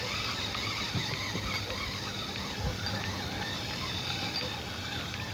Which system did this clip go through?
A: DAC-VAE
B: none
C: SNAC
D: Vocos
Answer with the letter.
B